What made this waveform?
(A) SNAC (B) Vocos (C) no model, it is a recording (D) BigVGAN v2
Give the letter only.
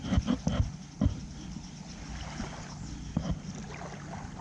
C